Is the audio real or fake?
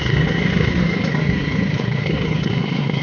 fake